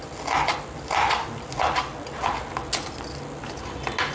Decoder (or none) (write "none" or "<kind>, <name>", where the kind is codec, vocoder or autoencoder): none